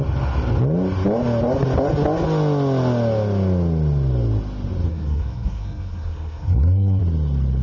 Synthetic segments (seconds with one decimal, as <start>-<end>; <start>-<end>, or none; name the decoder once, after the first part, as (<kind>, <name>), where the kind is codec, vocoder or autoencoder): 4.9-7.0 (codec, SNAC)